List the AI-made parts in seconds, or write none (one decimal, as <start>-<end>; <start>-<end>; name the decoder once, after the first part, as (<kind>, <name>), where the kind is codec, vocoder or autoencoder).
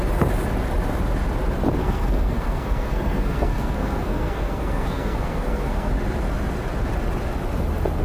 1.8-5.9 (codec, SNAC)